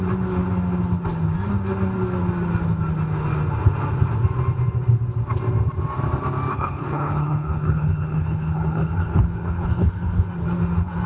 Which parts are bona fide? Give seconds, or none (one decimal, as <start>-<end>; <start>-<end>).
0.0-6.5; 10.3-11.1